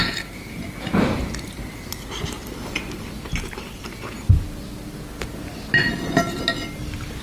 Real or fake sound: real